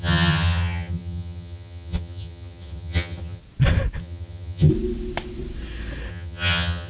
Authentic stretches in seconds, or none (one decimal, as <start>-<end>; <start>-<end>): 3.4-4.0; 4.7-6.1